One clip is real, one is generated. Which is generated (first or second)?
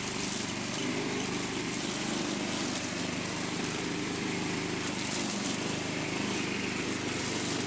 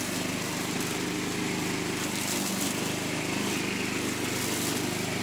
first